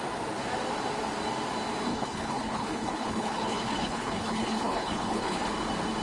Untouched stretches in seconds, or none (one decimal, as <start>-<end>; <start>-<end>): 0.0-1.9; 5.5-6.0